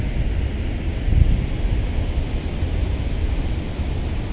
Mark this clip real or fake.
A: real